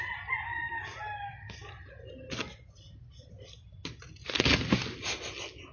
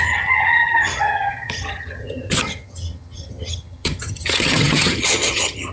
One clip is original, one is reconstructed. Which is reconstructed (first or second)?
second